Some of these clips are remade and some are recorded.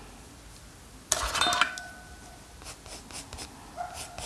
recorded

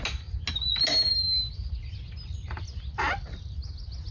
recorded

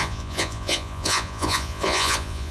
remade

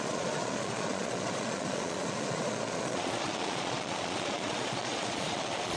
remade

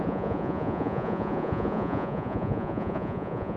remade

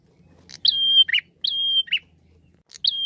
recorded